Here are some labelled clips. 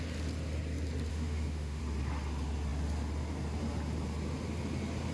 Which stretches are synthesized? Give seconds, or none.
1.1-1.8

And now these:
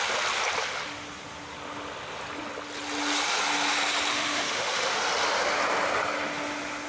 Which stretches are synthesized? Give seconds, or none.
4.1-5.0

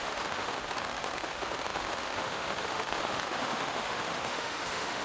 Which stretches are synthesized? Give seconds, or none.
0.0-5.0

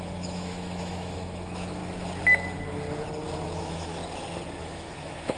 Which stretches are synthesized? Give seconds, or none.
0.0-1.8; 3.6-4.0; 4.6-5.4

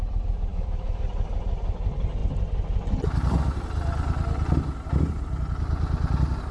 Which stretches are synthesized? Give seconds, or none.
0.5-1.0